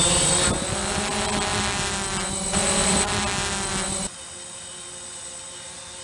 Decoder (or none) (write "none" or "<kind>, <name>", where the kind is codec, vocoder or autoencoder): none